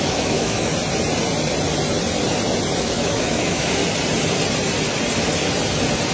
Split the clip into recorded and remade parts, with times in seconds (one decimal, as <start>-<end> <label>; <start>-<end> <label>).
0.0-0.7 remade; 0.7-2.8 recorded; 2.8-3.8 remade; 3.8-6.1 recorded